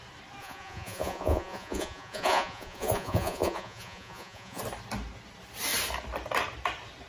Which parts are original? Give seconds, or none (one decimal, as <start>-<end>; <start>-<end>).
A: 0.0-0.4; 4.6-7.1